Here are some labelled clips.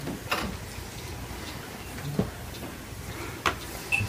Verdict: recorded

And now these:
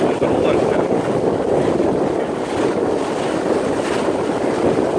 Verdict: recorded